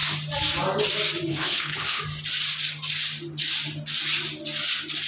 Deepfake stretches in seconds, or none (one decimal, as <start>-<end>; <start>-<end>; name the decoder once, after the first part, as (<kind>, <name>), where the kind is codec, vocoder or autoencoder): 1.3-2.0 (codec, HILCodec)

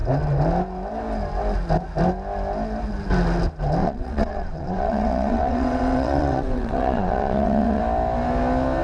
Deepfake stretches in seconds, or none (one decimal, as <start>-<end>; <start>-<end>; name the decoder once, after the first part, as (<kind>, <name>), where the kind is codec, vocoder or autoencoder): 3.8-7.8 (vocoder, WaveNeXt)

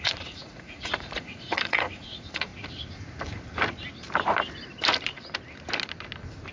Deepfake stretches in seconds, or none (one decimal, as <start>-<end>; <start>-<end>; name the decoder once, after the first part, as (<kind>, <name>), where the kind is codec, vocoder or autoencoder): 0.0-2.5 (vocoder, Vocos)

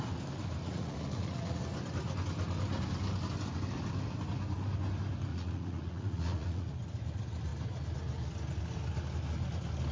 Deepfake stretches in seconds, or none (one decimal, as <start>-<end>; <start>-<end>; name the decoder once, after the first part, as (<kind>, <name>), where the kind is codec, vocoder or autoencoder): 0.6-1.6 (vocoder, Vocos); 5.3-6.7

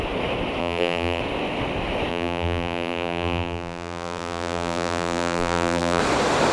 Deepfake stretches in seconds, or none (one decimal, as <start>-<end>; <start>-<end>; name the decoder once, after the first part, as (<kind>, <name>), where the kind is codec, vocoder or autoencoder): 0.6-1.2 (vocoder, BigVGAN v2); 2.1-6.0